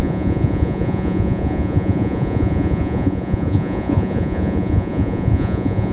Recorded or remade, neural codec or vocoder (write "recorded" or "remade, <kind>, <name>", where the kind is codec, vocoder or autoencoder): remade, vocoder, Vocos